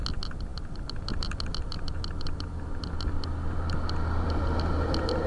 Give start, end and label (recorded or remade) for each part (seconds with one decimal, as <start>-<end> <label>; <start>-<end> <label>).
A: 0.0-5.3 recorded